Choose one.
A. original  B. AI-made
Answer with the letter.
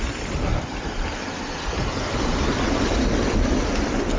A